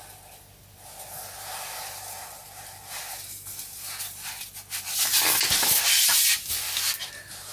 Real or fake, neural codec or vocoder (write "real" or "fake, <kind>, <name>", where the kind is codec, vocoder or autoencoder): real